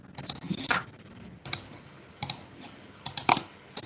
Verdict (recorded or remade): recorded